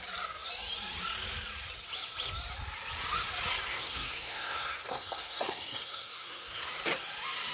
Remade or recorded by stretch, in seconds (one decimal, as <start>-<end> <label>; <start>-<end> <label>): 0.0-3.7 recorded; 3.7-6.7 remade; 6.7-7.5 recorded